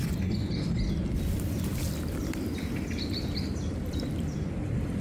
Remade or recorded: recorded